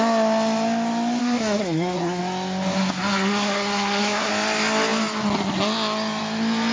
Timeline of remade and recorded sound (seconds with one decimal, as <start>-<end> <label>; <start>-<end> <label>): 0.0-1.2 recorded; 1.2-2.2 remade; 2.2-3.0 recorded; 3.0-4.3 remade; 4.3-6.7 recorded